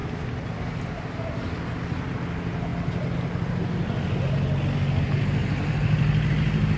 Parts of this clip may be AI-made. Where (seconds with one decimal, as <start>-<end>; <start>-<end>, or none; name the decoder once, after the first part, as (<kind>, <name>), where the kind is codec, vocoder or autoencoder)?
5.4-6.8 (vocoder, BigVGAN v2)